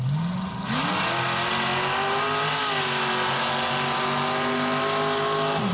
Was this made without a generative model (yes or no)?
yes